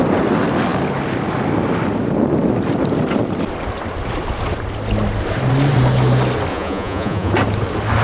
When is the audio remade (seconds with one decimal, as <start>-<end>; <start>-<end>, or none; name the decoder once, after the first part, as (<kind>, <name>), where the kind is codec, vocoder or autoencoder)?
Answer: 6.5-7.3 (vocoder, Vocos)